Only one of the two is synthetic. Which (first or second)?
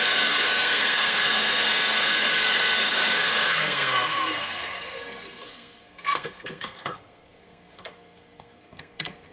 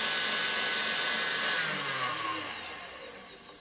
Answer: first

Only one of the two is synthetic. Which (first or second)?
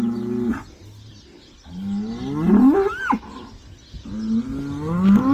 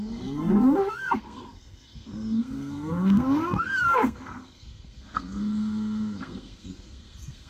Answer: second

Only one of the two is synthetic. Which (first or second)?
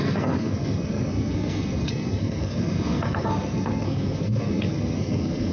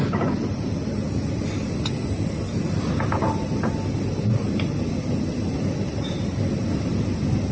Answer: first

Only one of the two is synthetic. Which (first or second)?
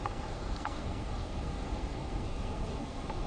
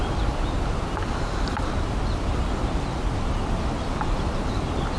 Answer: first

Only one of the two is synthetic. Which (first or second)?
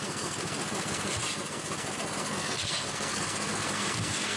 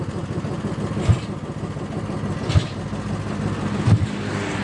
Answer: first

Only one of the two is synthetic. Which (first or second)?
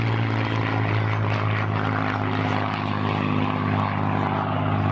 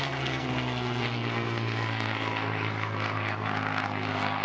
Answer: second